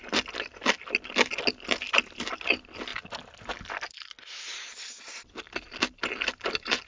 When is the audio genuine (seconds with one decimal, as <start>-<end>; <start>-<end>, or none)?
0.0-6.9